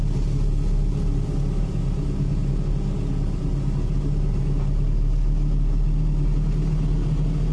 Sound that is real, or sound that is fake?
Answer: real